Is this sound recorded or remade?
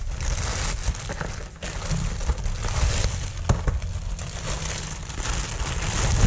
recorded